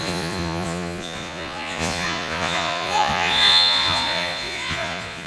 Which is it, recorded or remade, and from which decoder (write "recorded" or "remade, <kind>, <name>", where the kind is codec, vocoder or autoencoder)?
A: remade, vocoder, Vocos